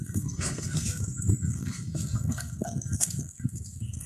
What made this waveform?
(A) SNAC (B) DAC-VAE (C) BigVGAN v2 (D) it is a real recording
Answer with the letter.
A